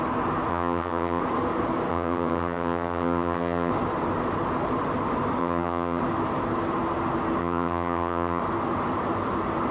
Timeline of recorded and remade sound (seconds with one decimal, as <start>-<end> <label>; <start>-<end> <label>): 0.0-0.5 recorded; 0.5-1.2 remade; 1.2-1.9 recorded; 1.9-3.7 remade; 3.7-5.4 recorded; 5.4-6.0 remade; 6.0-7.4 recorded; 7.4-8.4 remade; 8.4-9.7 recorded